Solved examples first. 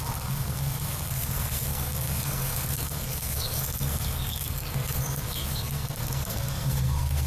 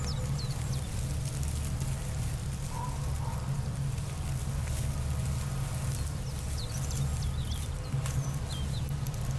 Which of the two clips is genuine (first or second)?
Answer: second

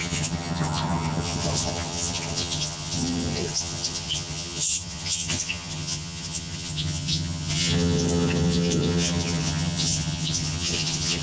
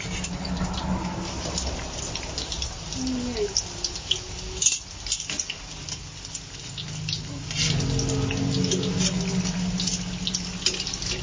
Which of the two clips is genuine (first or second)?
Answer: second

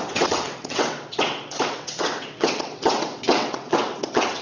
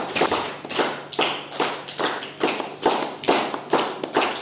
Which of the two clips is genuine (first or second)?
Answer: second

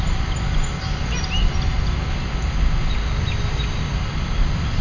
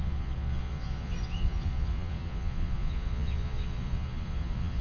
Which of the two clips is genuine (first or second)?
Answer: first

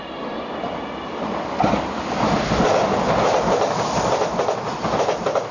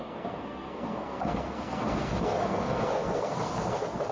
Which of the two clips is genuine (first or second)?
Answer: first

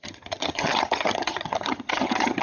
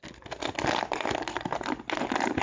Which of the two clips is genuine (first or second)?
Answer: second